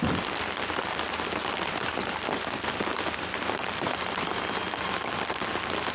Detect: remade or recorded recorded